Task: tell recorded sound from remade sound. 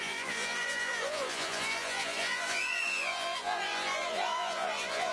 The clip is remade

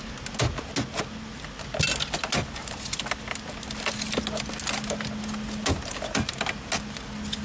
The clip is recorded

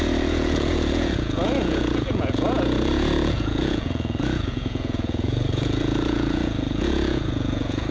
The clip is remade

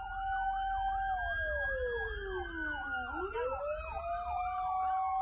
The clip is recorded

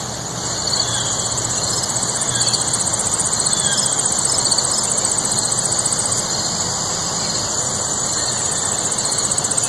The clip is recorded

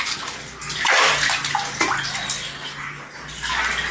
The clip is recorded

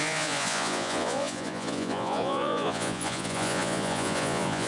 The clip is remade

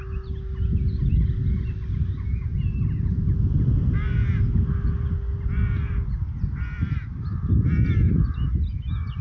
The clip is recorded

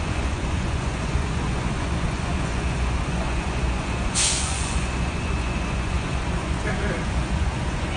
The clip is remade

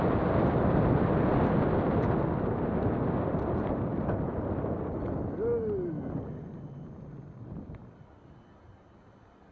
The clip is recorded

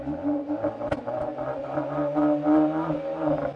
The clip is recorded